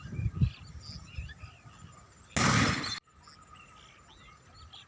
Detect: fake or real real